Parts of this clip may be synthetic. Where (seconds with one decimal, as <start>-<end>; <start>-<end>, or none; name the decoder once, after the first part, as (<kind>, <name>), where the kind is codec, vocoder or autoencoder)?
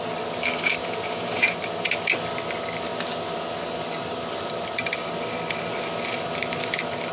0.8-1.6 (vocoder, Vocos)